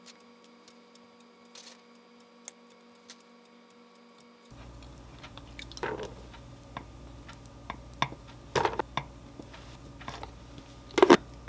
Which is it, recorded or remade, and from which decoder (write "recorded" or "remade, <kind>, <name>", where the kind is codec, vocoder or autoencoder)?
recorded